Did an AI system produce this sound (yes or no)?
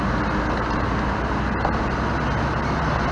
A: no